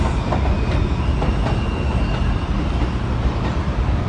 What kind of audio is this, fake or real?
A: real